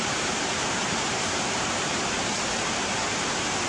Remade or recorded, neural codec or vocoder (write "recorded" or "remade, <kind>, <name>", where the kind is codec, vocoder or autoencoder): remade, vocoder, BigVGAN v2